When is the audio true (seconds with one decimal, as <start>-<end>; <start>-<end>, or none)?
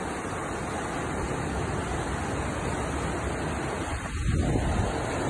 0.0-5.3